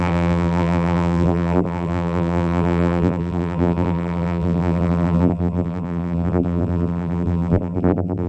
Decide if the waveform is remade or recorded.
remade